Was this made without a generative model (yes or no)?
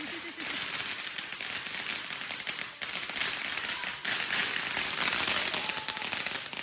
yes